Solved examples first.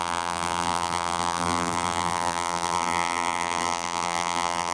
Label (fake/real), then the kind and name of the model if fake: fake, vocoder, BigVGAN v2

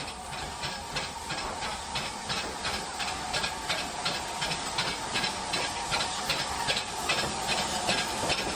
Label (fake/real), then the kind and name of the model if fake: real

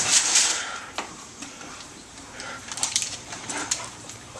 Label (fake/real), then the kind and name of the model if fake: fake, vocoder, BigVGAN v2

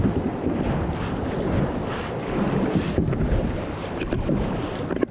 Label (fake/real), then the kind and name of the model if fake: real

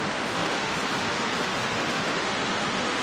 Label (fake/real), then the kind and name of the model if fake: fake, autoencoder, DAC-VAE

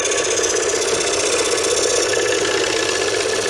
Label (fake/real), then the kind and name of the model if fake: real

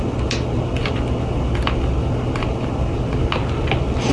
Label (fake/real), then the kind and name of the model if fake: real